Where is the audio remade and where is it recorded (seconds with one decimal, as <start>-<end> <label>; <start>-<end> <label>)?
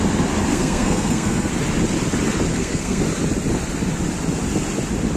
0.0-0.5 recorded; 0.5-1.5 remade; 1.5-2.5 recorded; 2.5-3.0 remade; 3.0-5.2 recorded